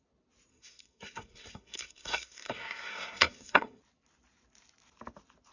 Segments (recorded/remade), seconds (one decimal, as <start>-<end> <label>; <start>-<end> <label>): 0.0-0.5 recorded; 0.5-3.8 remade; 3.8-5.5 recorded